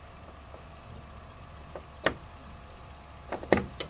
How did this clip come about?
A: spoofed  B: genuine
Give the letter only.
A